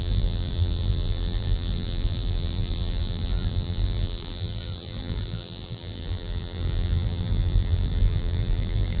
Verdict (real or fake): fake